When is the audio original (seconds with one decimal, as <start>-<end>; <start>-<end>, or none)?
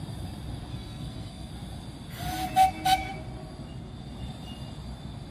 0.0-0.7; 1.5-5.3